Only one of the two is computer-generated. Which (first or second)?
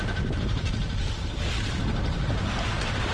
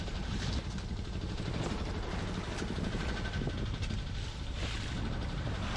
first